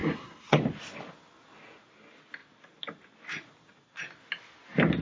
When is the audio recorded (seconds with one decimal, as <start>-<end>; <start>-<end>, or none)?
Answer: 0.6-5.0